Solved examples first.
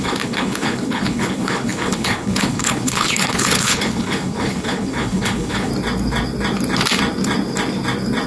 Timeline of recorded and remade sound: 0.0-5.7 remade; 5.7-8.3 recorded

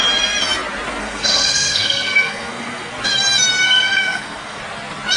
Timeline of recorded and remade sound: 0.0-1.0 recorded; 1.0-2.9 remade; 2.9-3.6 recorded; 3.6-4.6 remade; 4.6-5.2 recorded

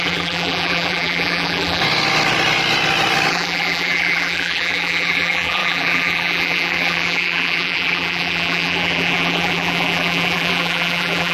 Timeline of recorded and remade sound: 0.0-1.8 remade; 1.8-3.3 recorded; 3.3-11.3 remade

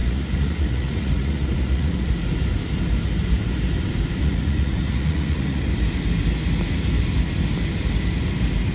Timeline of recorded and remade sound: 0.0-2.1 remade; 2.1-4.2 recorded; 4.2-5.6 remade; 5.6-8.7 recorded

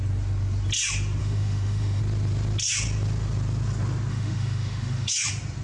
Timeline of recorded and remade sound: 0.0-1.2 recorded; 1.2-2.0 remade; 2.0-4.1 recorded; 4.1-5.1 remade; 5.1-5.6 recorded

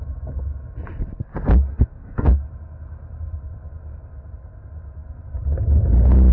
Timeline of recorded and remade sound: 0.0-1.7 recorded; 1.7-2.4 remade; 2.4-6.3 recorded

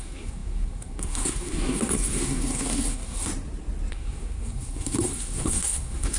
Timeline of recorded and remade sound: 0.0-3.3 remade; 3.3-3.9 recorded; 3.9-6.2 remade

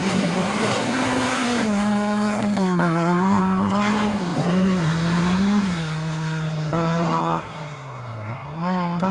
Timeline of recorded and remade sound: 0.0-9.1 remade